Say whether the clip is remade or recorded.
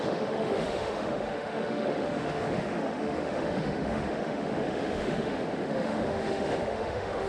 remade